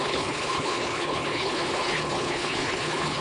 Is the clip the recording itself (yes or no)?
no